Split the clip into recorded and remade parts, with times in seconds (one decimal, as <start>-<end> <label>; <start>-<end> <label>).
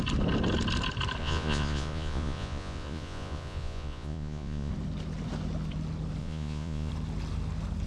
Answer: 0.0-1.2 recorded; 1.2-4.7 remade; 4.7-6.2 recorded; 6.2-6.9 remade; 6.9-7.9 recorded